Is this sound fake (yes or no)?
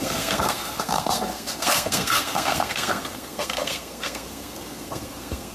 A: yes